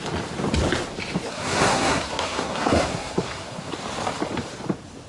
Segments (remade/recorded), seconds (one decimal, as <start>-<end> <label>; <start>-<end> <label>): 0.0-1.3 recorded; 1.3-3.7 remade; 3.7-5.1 recorded